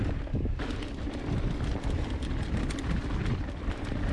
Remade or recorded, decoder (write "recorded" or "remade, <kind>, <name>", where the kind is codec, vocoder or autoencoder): recorded